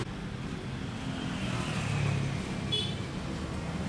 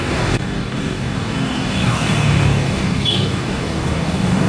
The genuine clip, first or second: first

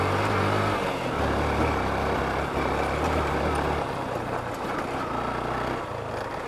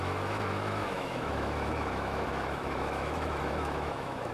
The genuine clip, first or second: first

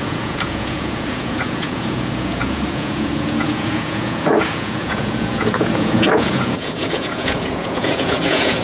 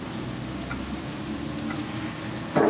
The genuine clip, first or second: second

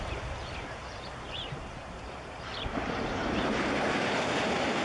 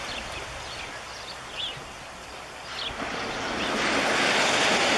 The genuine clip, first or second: second